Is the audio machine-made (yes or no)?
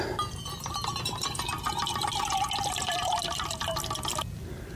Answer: no